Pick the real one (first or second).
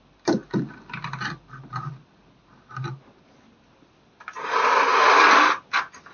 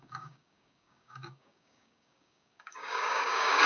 first